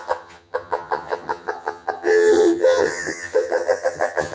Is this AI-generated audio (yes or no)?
yes